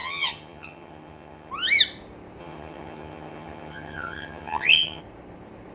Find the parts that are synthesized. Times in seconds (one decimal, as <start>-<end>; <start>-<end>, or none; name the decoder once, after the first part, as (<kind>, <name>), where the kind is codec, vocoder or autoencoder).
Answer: 0.0-1.5 (vocoder, HiFi-GAN); 2.4-5.0